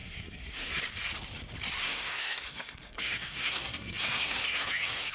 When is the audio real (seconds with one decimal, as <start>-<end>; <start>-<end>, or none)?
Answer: 0.8-1.8